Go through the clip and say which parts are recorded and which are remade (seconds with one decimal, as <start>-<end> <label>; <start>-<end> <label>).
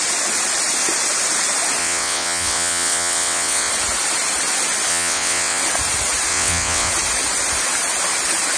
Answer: 0.0-1.8 recorded; 1.8-3.7 remade; 3.7-4.9 recorded; 4.9-5.6 remade; 5.6-6.3 recorded; 6.3-6.9 remade; 6.9-8.6 recorded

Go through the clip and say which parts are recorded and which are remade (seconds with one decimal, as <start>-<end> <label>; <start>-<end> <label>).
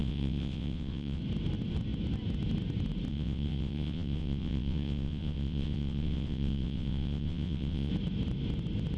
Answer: 0.0-1.2 remade; 1.2-3.1 recorded; 3.1-7.9 remade; 7.9-9.0 recorded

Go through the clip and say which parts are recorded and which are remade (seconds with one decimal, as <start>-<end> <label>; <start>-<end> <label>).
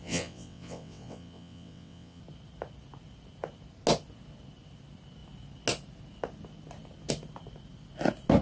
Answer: 0.0-2.2 remade; 2.2-8.4 recorded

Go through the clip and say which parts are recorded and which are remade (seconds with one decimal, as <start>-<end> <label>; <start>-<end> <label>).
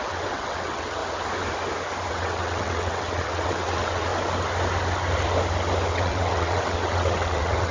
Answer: 0.0-1.0 remade; 1.0-2.1 recorded; 2.1-4.1 remade; 4.1-5.9 recorded; 5.9-7.7 remade